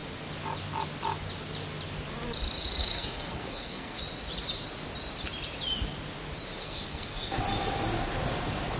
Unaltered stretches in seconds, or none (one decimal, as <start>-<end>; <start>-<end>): 0.0-2.8; 4.0-6.6; 7.4-8.8